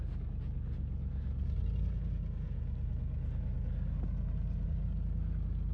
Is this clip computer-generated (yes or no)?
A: no